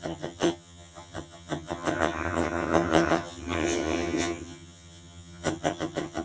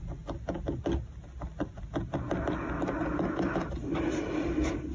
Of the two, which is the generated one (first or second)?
first